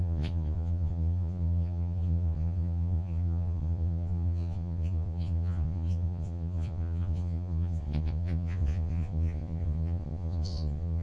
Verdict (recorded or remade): remade